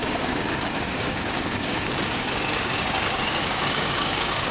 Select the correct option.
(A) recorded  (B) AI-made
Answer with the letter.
B